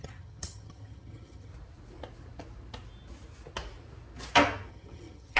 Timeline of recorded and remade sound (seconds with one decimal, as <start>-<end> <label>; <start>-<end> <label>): 0.0-1.5 remade; 1.5-4.7 recorded; 4.7-5.4 remade

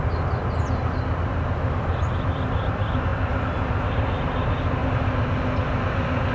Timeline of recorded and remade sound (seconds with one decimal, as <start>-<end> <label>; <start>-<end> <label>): 0.0-6.3 recorded

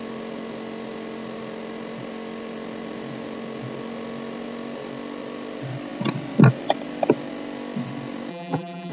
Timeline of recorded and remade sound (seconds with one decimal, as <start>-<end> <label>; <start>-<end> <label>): 0.0-8.3 recorded; 8.3-8.9 remade

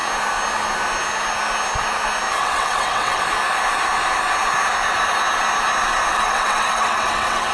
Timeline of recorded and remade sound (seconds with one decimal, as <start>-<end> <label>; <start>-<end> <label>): 0.0-2.4 recorded; 2.4-3.2 remade; 3.2-6.1 recorded; 6.1-7.5 remade

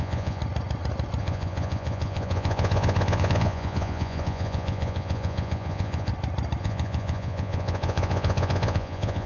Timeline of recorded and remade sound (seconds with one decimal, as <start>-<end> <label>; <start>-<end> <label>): 0.0-0.4 remade; 0.4-1.2 recorded; 1.2-6.1 remade; 6.1-6.6 recorded; 6.6-9.3 remade

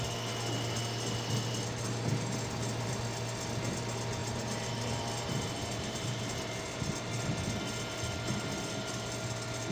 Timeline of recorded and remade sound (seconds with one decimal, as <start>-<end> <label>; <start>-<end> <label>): 0.0-4.2 recorded; 4.2-6.2 remade; 6.2-9.7 recorded

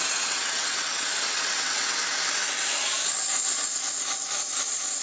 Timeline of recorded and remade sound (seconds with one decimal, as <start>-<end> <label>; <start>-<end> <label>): 0.0-2.0 remade; 2.0-5.0 recorded

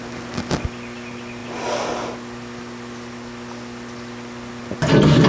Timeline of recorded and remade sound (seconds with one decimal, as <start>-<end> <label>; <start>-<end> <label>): 0.0-5.3 recorded